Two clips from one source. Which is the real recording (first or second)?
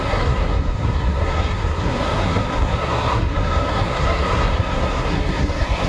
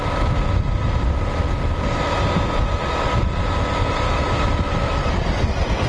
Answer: second